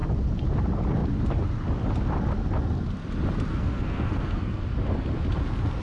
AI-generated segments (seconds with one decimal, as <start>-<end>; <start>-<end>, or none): 3.5-4.6